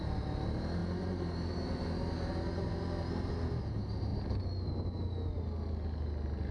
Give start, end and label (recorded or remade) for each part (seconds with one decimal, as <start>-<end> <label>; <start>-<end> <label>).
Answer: 0.0-6.5 recorded